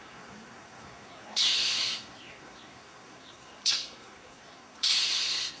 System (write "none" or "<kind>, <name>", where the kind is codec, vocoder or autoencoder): codec, SNAC